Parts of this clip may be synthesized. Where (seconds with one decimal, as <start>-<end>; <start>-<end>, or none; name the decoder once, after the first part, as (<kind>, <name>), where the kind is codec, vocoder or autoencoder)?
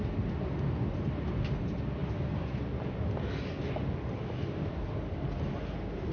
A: 2.0-2.6 (vocoder, BigVGAN v2)